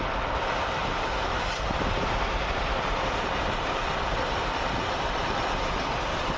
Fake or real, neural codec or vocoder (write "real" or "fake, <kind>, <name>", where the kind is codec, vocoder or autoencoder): real